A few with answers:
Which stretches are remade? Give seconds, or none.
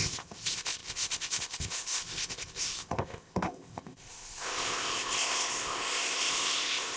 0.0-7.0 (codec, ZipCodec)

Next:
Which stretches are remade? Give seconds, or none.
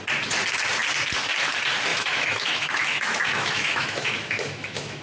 1.9-5.0 (autoencoder, DAC-VAE)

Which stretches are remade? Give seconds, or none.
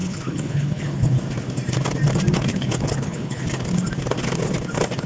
0.0-1.1 (codec, HILCodec); 2.5-3.5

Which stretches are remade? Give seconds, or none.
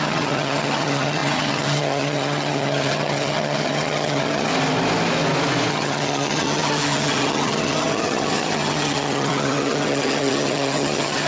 0.0-4.5 (vocoder, HiFi-GAN); 5.7-11.3